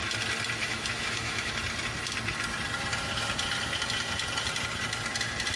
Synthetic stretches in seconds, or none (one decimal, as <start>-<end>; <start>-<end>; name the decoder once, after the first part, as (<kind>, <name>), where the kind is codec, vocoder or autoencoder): 0.6-1.5 (autoencoder, DAC-VAE)